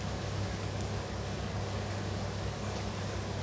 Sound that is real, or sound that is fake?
fake